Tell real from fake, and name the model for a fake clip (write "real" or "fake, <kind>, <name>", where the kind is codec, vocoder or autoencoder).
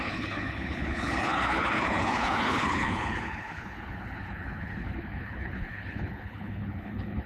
fake, codec, HILCodec